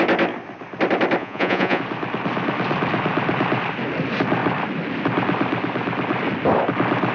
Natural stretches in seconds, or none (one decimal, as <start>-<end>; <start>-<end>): 0.0-1.2; 1.8-7.1